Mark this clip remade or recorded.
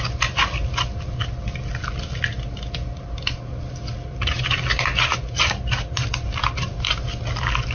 recorded